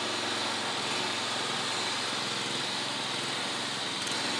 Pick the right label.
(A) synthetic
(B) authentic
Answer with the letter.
B